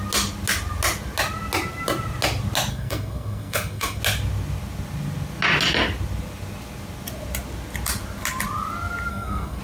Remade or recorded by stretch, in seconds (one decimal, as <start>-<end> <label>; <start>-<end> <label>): 0.0-2.7 recorded; 2.7-4.0 remade; 4.0-9.1 recorded; 9.1-9.6 remade